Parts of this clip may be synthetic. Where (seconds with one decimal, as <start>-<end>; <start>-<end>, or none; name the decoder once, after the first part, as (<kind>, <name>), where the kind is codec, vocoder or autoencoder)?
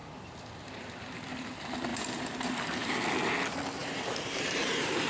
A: 1.9-2.9 (vocoder, BigVGAN v2); 3.8-5.1